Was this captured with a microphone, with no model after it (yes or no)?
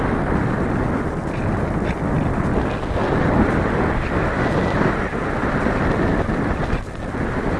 yes